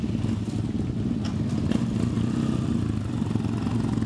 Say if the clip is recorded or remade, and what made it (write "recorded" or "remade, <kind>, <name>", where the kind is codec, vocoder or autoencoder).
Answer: recorded